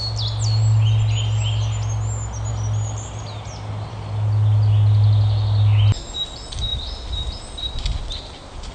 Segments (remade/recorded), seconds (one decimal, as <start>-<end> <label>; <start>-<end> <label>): 0.0-8.7 recorded